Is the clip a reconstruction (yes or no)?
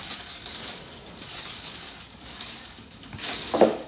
yes